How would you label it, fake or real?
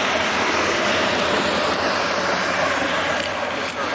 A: real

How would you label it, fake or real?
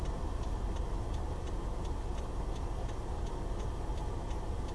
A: real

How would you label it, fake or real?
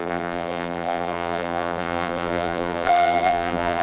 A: fake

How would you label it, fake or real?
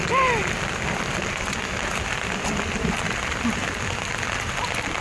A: real